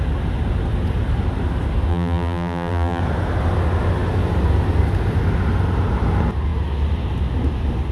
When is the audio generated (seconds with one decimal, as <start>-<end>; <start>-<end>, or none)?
1.9-3.0